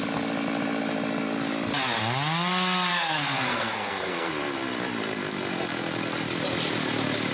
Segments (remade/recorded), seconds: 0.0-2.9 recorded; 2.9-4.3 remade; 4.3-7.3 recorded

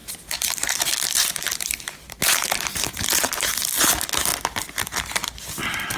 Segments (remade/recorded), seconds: 0.0-3.6 remade; 3.6-6.0 recorded

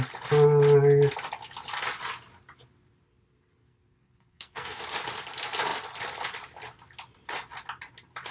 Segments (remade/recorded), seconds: 0.0-3.6 recorded; 3.6-4.8 remade; 4.8-8.3 recorded